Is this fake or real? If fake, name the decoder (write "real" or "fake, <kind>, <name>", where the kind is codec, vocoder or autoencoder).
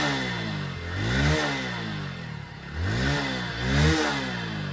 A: real